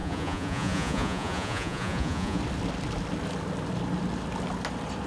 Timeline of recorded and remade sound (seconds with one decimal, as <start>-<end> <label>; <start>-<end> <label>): 0.0-2.4 remade; 2.4-5.1 recorded